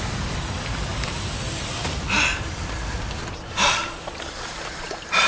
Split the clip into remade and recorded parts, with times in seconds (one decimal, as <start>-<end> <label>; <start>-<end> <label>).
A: 0.0-0.9 recorded; 0.9-4.1 remade; 4.1-5.3 recorded